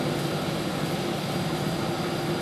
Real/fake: real